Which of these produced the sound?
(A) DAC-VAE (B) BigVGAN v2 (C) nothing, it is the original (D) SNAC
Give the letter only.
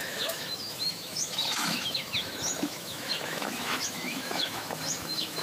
A